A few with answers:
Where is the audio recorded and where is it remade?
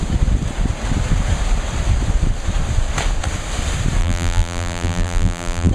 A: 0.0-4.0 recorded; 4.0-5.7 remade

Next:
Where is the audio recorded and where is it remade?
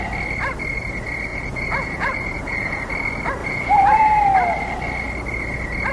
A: 0.0-1.3 recorded; 1.3-2.8 remade; 2.8-3.4 recorded; 3.4-4.0 remade; 4.0-5.9 recorded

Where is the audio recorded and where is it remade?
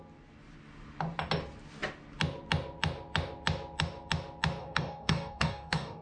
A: 0.0-4.6 recorded; 4.6-6.0 remade